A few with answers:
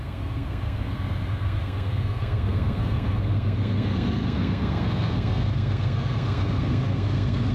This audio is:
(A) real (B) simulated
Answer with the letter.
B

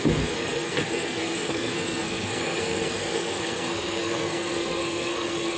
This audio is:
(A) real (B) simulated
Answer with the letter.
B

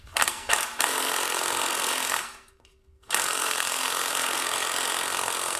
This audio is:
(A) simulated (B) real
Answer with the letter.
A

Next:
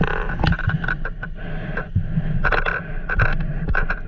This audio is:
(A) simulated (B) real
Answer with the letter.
B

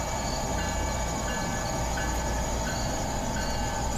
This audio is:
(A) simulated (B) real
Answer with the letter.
B